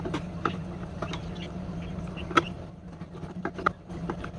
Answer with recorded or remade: recorded